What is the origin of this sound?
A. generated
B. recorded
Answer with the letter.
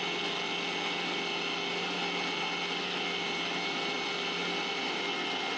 B